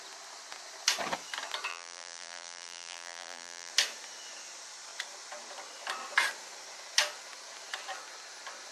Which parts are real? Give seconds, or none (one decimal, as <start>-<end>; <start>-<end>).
0.0-1.7; 3.7-8.7